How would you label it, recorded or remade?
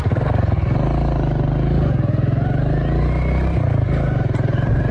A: recorded